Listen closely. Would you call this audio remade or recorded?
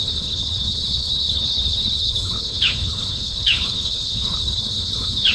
remade